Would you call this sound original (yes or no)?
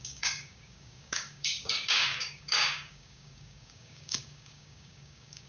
no